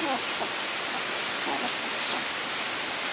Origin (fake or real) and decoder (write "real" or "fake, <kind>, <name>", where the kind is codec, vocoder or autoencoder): real